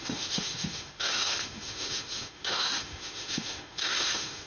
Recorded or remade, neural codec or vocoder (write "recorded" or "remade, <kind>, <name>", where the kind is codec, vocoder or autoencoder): remade, autoencoder, DAC-VAE